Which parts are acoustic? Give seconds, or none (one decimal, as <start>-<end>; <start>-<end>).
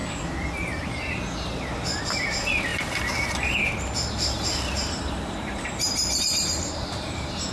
0.0-2.7